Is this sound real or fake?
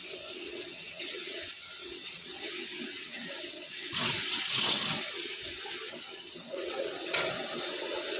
fake